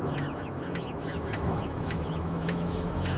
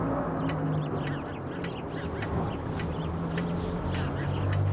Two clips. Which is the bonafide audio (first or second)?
second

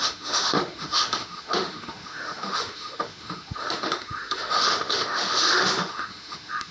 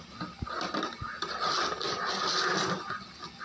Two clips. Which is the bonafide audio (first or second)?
second